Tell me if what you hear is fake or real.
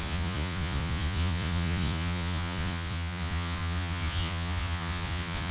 fake